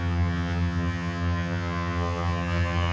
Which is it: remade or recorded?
remade